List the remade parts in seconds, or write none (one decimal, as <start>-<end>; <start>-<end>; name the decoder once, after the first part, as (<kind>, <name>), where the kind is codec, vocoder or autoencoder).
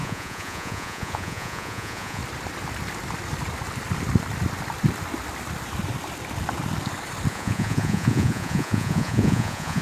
0.0-2.2 (vocoder, Vocos); 7.3-9.8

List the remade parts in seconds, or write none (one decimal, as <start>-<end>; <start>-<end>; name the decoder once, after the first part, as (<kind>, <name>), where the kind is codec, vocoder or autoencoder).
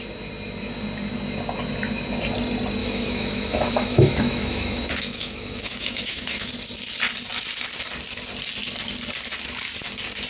2.8-6.5 (autoencoder, DAC-VAE)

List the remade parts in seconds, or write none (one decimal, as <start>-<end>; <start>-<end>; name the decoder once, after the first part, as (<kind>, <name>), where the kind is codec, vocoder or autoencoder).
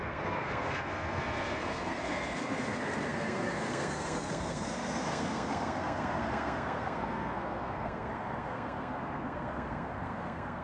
0.0-10.6 (codec, SNAC)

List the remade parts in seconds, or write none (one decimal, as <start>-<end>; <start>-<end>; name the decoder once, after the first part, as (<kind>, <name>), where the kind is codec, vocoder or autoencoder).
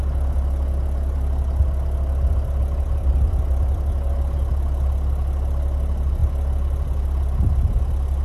none